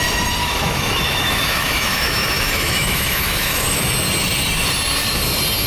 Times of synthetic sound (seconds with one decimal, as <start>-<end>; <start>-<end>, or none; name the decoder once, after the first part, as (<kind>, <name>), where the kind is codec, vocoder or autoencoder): 0.4-3.8 (autoencoder, DAC-VAE)